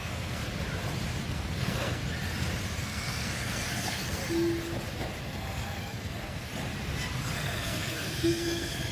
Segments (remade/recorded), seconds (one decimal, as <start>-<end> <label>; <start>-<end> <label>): 0.0-0.4 remade; 0.4-1.3 recorded; 1.3-2.0 remade; 2.0-2.8 recorded; 2.8-4.2 remade; 4.2-5.2 recorded; 5.2-6.5 remade; 6.5-7.2 recorded; 7.2-8.9 remade